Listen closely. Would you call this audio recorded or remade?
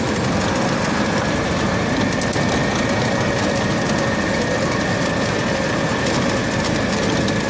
recorded